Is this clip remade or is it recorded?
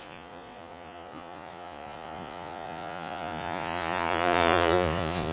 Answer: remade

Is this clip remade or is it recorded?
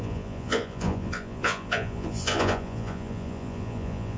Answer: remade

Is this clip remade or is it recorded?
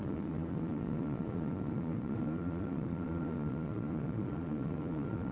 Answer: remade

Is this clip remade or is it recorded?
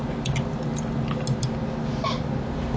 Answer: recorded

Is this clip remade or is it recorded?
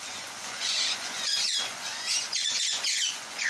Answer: remade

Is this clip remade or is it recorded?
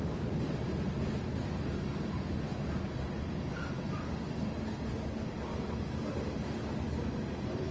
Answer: recorded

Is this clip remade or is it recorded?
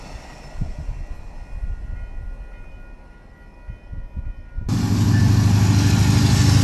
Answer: recorded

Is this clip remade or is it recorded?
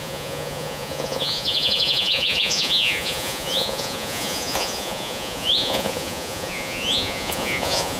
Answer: remade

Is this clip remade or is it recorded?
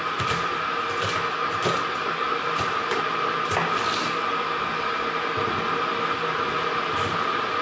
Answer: recorded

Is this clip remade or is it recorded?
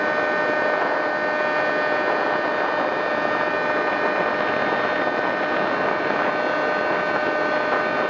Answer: recorded